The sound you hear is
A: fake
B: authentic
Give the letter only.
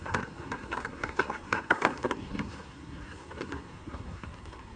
A